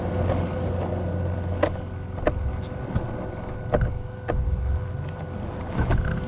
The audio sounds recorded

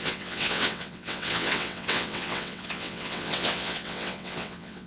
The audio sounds remade